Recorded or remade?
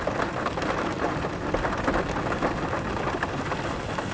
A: recorded